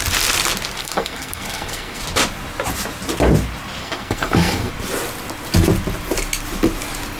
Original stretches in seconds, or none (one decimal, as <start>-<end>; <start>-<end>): 0.0-0.8; 2.0-3.8; 4.7-7.2